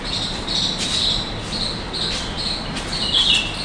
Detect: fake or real real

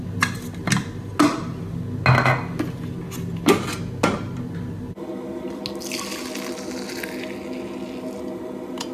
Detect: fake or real real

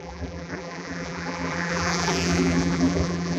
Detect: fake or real fake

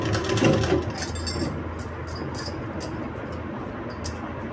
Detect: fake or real real